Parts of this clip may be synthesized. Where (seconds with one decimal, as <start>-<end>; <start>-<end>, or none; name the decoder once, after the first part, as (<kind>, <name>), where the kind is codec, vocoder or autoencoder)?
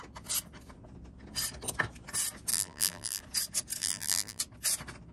2.5-3.2 (vocoder, BigVGAN v2); 3.8-4.4